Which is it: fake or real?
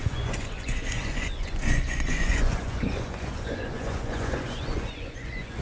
fake